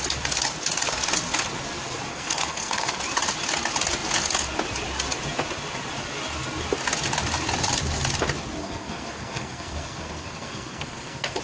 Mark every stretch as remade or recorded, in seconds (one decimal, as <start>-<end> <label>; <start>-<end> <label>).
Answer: 0.0-2.1 recorded; 2.1-3.0 remade; 3.0-8.6 recorded; 8.6-11.4 remade